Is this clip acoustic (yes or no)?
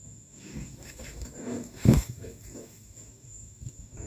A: no